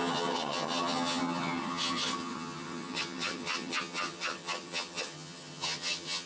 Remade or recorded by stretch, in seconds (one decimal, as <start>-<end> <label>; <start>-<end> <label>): 0.0-6.3 remade